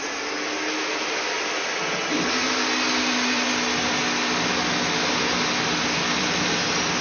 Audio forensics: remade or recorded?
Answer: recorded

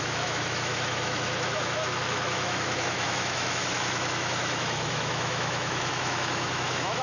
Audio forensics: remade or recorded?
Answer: remade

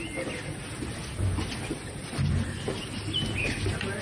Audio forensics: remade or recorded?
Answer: recorded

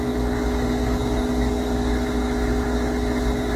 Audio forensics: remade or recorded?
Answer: recorded